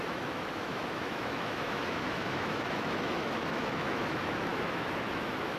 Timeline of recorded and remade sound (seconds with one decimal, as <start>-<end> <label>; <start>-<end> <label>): 0.0-5.6 remade